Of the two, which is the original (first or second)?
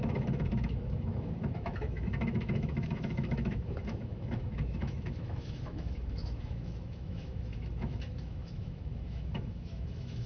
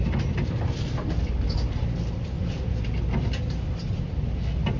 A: second